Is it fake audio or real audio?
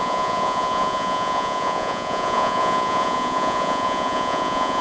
fake